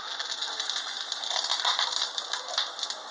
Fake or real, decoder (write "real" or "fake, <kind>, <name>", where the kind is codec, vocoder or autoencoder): real